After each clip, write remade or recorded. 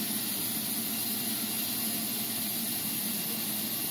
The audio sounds recorded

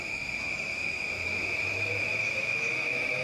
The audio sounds remade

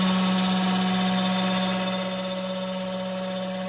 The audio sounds recorded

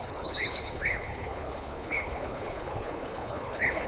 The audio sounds remade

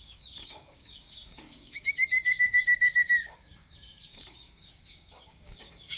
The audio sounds remade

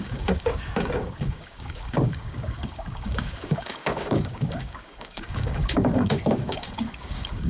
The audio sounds remade